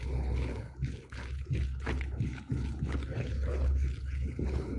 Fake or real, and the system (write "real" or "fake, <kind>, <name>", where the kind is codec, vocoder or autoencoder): fake, codec, HILCodec